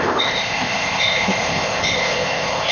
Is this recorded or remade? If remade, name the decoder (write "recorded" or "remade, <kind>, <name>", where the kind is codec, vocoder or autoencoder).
remade, codec, ZipCodec